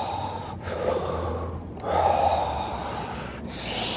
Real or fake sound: real